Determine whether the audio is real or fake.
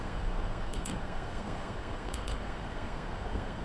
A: fake